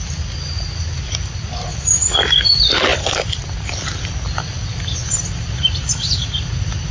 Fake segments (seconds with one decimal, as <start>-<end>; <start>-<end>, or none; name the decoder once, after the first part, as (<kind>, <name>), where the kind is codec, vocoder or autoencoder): 2.9-4.0 (vocoder, BigVGAN v2); 5.0-5.9